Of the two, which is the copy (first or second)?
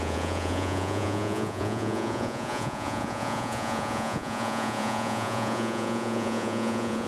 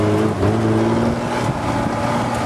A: first